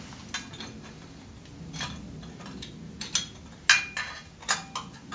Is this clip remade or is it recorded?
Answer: recorded